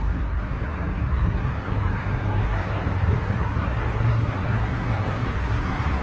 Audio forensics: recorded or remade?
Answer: remade